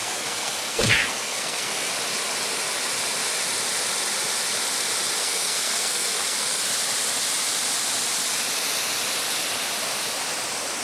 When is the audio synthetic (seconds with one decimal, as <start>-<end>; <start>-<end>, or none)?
0.0-1.9; 5.2-6.6